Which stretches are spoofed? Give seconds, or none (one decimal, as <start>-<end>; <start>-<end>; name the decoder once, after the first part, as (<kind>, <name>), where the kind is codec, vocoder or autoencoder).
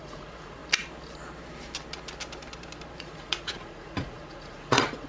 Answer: 0.0-0.6 (vocoder, Vocos); 3.0-5.1